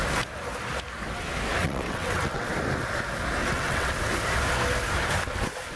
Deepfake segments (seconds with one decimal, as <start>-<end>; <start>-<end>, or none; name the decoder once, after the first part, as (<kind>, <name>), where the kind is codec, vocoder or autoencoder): 1.6-2.5 (vocoder, WaveNeXt); 3.4-4.0